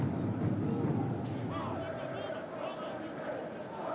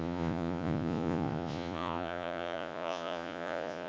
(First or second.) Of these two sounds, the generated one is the second